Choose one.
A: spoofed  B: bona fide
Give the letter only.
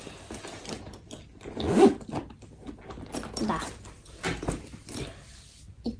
B